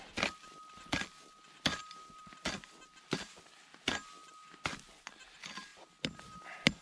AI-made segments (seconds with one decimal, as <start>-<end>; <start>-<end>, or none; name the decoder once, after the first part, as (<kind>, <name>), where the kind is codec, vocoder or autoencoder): none